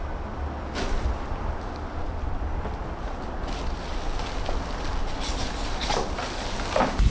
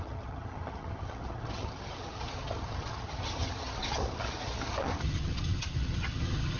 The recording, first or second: first